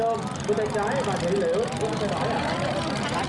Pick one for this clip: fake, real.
real